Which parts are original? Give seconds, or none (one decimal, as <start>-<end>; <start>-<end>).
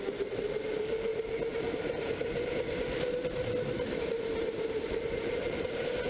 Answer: 1.1-4.8